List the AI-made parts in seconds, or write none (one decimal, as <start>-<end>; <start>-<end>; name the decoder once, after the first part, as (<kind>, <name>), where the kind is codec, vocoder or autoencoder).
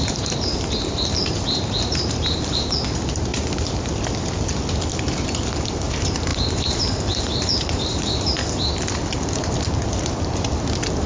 0.0-3.3 (vocoder, BigVGAN v2); 5.6-8.4; 9.6-11.1